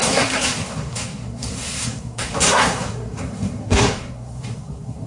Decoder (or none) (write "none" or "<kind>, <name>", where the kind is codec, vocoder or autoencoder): codec, SNAC